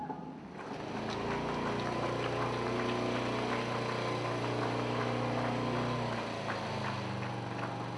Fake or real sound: real